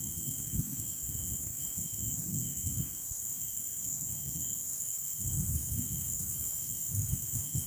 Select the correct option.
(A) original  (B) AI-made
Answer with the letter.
B